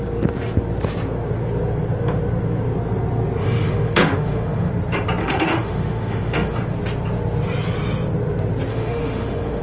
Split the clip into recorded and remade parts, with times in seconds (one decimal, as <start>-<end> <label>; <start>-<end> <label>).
0.0-3.4 recorded; 3.4-4.7 remade; 4.7-5.2 recorded; 5.2-6.6 remade; 6.6-8.7 recorded; 8.7-9.6 remade